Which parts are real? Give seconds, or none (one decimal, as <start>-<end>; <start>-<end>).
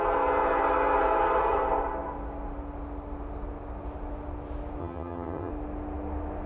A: 0.0-4.8; 5.5-6.5